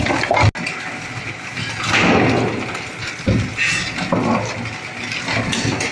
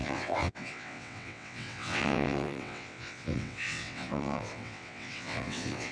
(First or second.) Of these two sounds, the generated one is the second